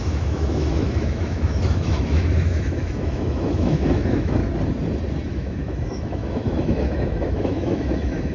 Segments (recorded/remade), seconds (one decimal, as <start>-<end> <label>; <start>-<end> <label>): 0.0-4.4 remade; 4.4-5.3 recorded; 5.3-8.3 remade